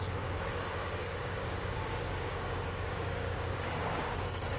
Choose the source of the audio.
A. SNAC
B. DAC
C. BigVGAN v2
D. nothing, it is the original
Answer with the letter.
B